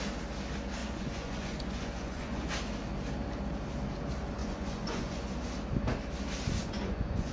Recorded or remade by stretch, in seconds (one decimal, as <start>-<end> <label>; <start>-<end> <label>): 0.0-0.8 recorded; 0.8-2.5 remade; 2.5-4.4 recorded; 4.4-5.3 remade; 5.3-6.6 recorded; 6.6-7.3 remade